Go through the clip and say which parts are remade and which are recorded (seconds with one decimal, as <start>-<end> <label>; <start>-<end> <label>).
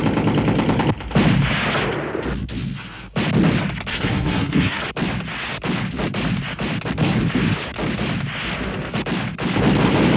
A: 0.0-3.9 recorded; 3.9-4.8 remade; 4.8-10.2 recorded